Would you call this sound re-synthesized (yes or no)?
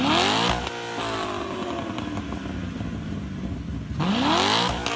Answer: no